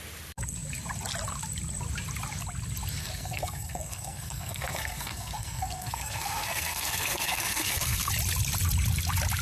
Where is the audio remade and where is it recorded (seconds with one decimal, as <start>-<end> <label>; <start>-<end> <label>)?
0.0-3.0 recorded; 3.0-8.1 remade; 8.1-9.4 recorded